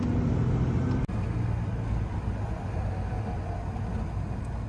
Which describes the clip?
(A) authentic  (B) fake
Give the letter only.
A